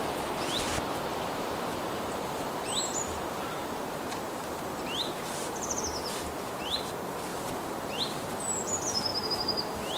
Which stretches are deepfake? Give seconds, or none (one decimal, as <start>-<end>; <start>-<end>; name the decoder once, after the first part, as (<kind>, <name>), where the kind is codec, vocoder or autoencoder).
1.1-5.8 (vocoder, BigVGAN v2); 7.3-8.0; 9.1-10.0